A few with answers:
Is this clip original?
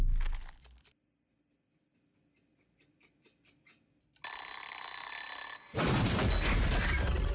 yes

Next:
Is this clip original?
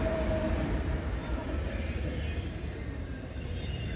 no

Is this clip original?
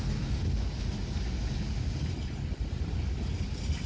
yes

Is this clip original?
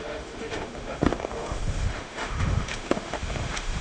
no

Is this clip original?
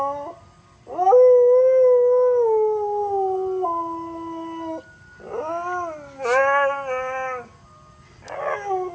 yes